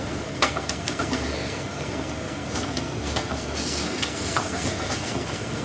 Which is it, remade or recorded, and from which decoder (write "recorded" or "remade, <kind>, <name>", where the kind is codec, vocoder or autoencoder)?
remade, codec, SNAC